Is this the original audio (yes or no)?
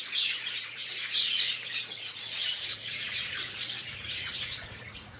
no